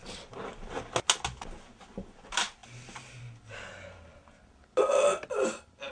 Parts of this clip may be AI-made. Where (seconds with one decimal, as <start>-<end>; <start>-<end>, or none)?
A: none